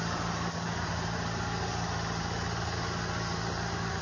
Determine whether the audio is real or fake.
real